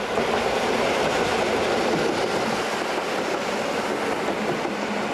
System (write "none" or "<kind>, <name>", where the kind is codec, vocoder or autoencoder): none